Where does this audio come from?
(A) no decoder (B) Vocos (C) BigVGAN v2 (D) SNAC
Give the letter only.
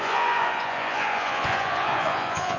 B